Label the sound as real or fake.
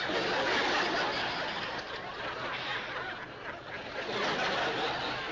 real